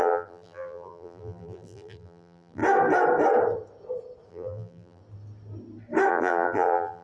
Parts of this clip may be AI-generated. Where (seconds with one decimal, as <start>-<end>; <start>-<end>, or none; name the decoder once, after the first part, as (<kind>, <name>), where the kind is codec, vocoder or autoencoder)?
0.0-2.6 (vocoder, BigVGAN v2); 4.3-5.0; 6.1-7.0